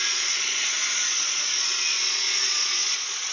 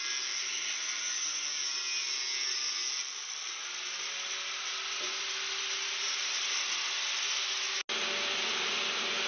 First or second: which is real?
second